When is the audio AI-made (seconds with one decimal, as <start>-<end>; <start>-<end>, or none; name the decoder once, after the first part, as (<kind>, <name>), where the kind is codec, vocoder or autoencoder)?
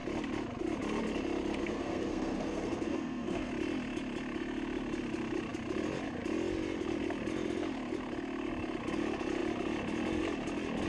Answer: 1.6-3.5 (codec, SNAC)